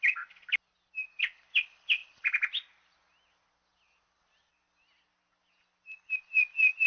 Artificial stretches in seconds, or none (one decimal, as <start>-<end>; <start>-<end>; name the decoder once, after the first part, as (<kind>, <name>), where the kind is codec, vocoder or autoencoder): none